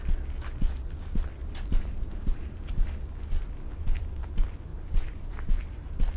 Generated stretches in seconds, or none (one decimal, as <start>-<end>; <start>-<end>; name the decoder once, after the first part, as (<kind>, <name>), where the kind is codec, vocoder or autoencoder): 1.4-2.7 (vocoder, BigVGAN v2); 3.7-4.2; 4.7-5.6